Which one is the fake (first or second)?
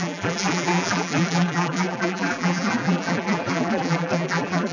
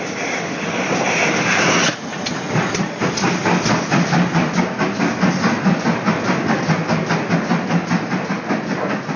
first